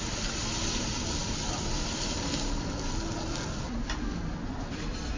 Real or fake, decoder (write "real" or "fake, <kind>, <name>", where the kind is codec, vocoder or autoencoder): real